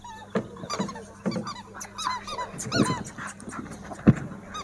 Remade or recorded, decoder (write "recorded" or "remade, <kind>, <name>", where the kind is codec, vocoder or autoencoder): recorded